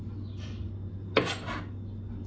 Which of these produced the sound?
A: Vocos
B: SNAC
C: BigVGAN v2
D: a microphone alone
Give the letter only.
D